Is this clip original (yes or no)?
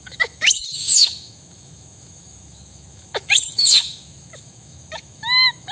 no